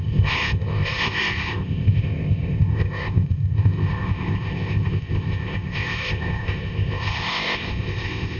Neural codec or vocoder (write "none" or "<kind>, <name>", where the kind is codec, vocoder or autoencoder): codec, ZipCodec